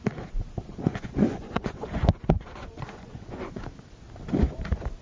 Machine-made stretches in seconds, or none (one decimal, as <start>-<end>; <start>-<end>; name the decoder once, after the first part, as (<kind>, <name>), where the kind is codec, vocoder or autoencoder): 0.7-3.6 (vocoder, Vocos)